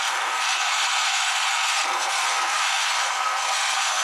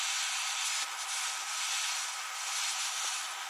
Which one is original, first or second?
second